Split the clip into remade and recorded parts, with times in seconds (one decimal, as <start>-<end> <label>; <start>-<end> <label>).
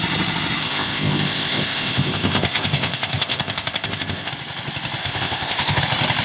0.0-0.6 recorded; 0.6-4.3 remade; 4.3-5.0 recorded; 5.0-5.8 remade; 5.8-6.2 recorded